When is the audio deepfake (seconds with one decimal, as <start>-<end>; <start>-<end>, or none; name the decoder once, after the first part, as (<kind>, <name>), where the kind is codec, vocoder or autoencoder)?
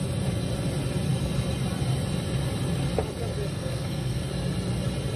3.5-4.3 (codec, SNAC)